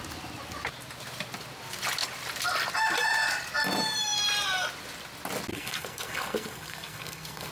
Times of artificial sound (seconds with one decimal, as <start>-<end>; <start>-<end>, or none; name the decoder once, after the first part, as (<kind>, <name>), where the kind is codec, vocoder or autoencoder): 5.5-7.5 (codec, SNAC)